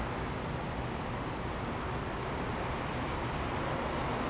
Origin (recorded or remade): recorded